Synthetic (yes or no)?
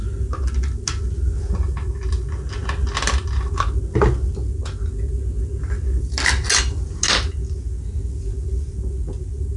no